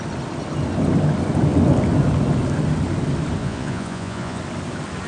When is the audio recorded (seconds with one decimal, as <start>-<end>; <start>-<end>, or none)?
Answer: 0.0-3.4; 4.4-5.1